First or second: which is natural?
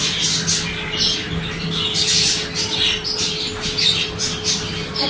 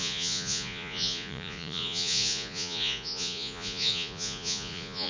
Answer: first